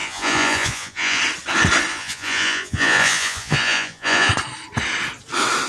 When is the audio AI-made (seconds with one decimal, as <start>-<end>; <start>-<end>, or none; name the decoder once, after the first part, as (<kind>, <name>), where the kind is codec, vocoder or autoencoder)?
0.0-1.2 (vocoder, Vocos); 1.9-4.3